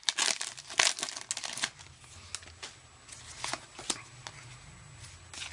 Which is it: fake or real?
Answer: real